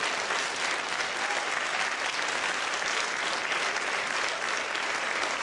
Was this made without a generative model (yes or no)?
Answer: yes